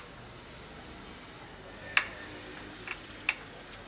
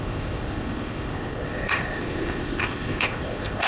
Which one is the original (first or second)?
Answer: first